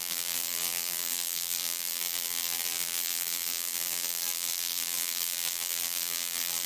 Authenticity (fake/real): fake